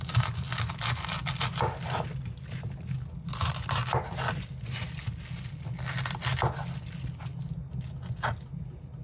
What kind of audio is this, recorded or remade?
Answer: recorded